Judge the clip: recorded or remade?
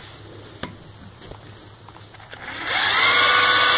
recorded